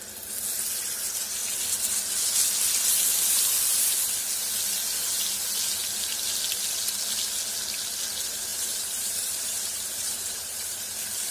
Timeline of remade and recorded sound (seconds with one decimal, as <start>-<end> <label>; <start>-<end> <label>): 0.0-8.5 recorded; 8.5-10.8 remade; 10.8-11.3 recorded